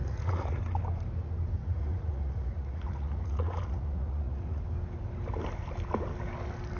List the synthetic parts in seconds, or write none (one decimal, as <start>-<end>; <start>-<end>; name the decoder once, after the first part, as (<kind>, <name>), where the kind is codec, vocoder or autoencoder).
0.0-0.6 (vocoder, Vocos); 1.6-4.6